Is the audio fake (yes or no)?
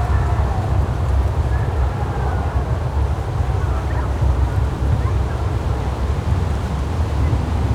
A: no